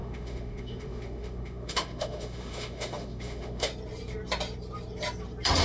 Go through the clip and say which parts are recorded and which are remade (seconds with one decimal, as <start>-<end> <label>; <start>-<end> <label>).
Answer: 0.0-3.7 remade; 3.7-5.6 recorded